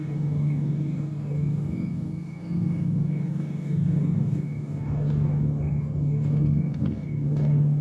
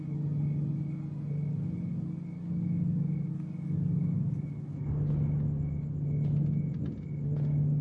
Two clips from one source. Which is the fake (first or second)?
first